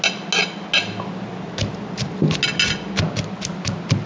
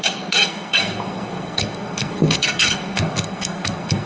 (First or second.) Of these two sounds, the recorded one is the first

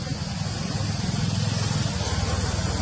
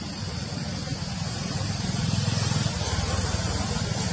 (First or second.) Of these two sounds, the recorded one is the first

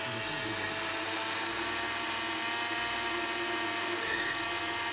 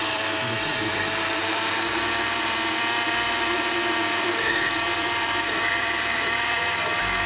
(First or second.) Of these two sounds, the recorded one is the first